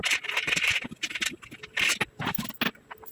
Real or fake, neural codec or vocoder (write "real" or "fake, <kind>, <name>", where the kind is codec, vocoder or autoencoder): real